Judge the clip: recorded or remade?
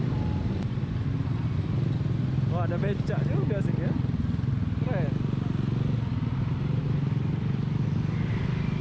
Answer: recorded